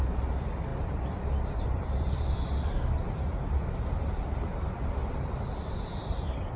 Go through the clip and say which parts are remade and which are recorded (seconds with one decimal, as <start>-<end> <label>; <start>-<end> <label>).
0.0-6.6 remade